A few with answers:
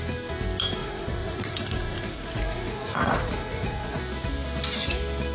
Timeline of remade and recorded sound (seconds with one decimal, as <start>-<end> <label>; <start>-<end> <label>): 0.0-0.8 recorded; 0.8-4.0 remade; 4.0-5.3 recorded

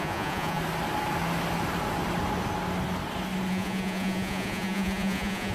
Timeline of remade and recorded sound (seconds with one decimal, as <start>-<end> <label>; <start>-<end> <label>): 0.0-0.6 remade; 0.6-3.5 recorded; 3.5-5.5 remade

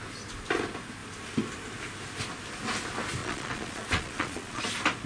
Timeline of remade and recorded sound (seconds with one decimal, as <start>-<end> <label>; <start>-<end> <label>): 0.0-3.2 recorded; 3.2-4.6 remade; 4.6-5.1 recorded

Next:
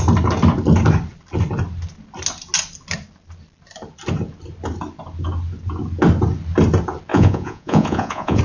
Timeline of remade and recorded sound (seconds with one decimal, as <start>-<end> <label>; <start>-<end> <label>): 0.0-7.1 recorded; 7.1-8.4 remade